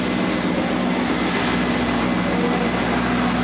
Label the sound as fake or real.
real